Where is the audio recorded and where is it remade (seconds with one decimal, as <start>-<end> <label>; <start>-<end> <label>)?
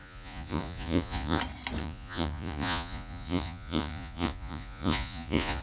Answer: 0.0-1.4 remade; 1.4-1.8 recorded; 1.8-5.6 remade